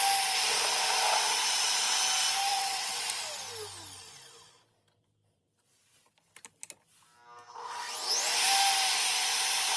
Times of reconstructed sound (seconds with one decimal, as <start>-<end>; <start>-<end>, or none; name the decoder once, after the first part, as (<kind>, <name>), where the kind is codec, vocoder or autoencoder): 2.5-3.0 (vocoder, WaveNeXt)